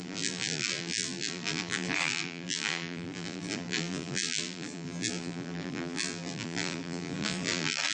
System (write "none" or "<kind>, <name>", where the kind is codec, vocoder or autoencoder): vocoder, BigVGAN v2